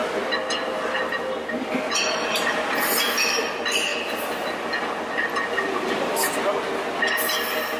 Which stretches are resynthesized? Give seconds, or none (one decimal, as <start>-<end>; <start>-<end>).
none